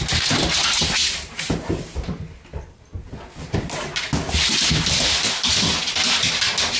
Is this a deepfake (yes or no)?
no